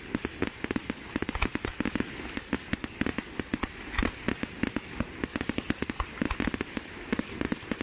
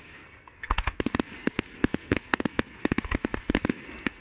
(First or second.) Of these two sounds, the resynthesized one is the second